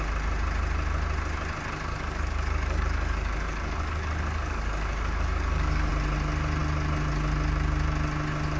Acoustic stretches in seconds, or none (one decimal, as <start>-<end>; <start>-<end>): 0.0-1.9; 5.9-8.6